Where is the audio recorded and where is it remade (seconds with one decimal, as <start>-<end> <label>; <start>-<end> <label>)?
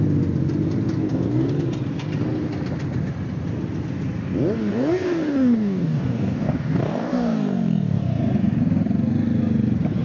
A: 0.0-1.0 recorded; 1.0-1.5 remade; 1.5-4.6 recorded; 4.6-8.0 remade; 8.0-10.0 recorded